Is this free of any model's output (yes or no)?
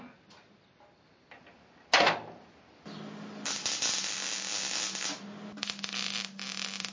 yes